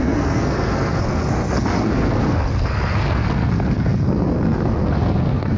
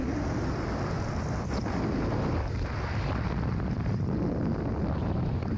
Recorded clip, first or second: second